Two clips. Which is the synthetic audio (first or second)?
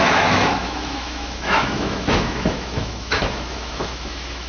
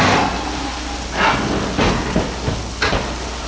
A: first